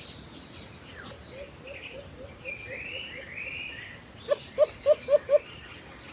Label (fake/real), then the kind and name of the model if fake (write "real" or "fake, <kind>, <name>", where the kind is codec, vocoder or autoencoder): real